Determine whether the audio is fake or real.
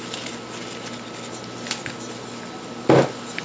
real